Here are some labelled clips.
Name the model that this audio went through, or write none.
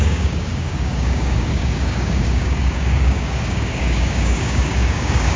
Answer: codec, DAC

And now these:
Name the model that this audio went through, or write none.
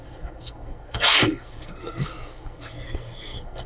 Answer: codec, SNAC